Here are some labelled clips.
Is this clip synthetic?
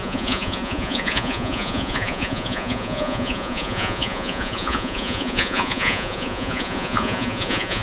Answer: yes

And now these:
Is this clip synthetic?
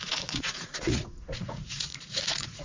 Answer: yes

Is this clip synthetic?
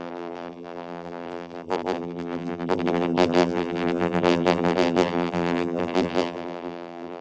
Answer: yes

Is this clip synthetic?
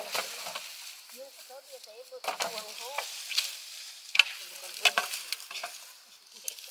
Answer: no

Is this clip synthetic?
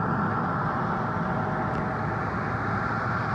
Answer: no